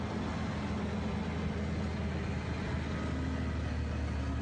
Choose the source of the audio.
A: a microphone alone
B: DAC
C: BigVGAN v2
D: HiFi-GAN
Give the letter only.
A